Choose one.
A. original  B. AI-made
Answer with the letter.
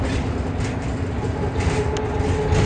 A